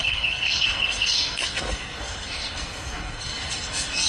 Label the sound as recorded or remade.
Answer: remade